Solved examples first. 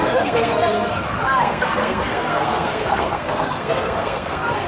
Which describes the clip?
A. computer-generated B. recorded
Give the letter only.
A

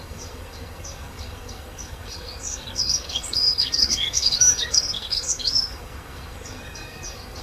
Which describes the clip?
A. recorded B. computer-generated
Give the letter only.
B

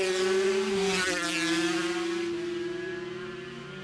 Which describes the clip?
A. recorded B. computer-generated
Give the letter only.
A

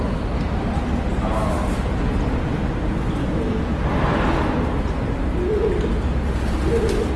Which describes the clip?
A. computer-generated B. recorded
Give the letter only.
B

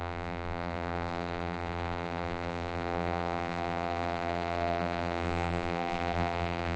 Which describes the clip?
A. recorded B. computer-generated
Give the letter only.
B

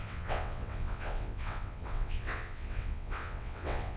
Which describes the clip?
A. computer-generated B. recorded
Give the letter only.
A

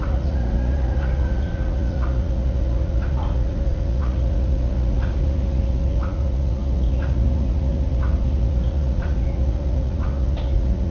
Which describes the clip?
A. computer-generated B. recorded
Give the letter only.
A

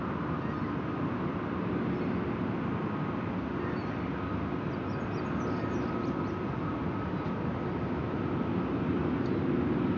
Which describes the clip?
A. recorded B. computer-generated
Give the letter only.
A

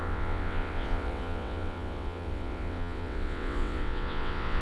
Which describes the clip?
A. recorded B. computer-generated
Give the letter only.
B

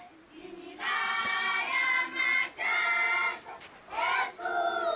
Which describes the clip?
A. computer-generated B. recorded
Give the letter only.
B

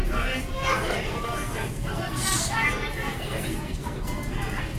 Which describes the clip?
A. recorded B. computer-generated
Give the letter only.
B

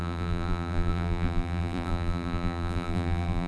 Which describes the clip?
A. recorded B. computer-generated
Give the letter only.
B